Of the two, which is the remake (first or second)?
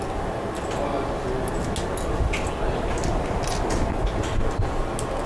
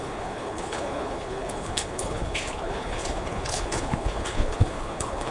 second